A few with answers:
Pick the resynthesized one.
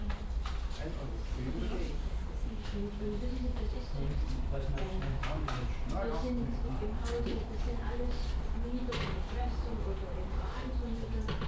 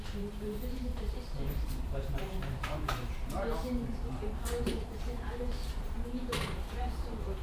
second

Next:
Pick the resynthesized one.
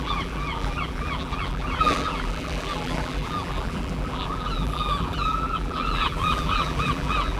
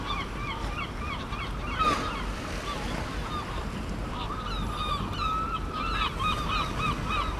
first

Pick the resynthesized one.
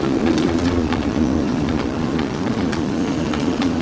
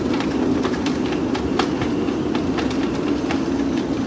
first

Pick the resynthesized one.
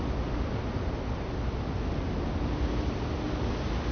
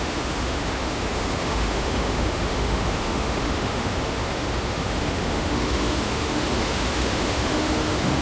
second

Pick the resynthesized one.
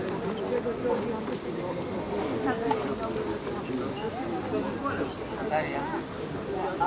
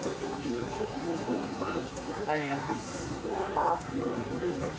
second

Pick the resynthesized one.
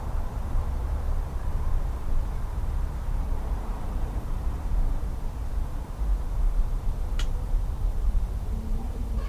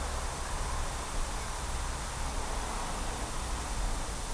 first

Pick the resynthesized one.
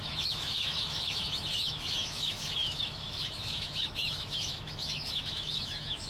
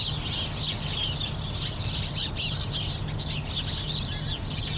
first